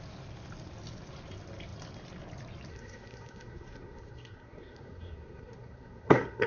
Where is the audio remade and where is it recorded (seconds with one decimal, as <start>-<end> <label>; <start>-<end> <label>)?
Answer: 0.0-2.7 recorded; 2.7-6.5 remade